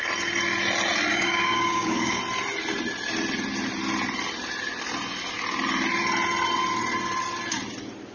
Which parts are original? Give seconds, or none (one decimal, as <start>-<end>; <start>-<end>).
0.0-1.1; 2.2-8.1